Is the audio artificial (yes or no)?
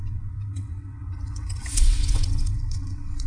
yes